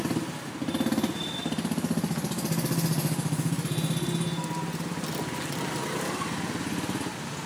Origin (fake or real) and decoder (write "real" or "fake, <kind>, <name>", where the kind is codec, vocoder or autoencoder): real